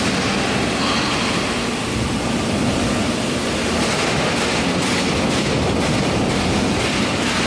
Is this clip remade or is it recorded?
recorded